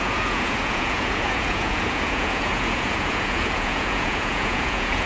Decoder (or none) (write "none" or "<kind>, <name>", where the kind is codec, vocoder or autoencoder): vocoder, Vocos